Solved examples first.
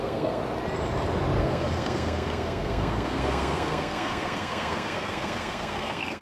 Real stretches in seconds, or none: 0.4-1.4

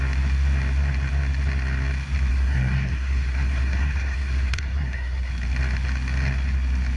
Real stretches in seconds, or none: 0.0-2.3; 5.3-7.0